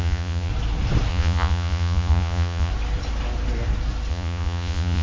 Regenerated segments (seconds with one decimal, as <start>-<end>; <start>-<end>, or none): 0.0-0.5; 1.1-2.7; 4.1-5.0